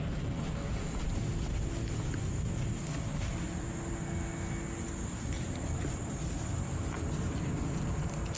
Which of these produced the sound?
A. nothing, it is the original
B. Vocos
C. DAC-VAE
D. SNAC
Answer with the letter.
A